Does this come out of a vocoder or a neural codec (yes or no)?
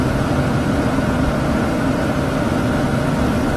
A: no